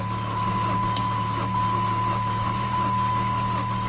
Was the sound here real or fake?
real